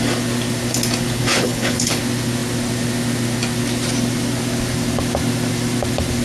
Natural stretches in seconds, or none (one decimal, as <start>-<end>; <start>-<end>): 0.0-1.0; 2.0-6.2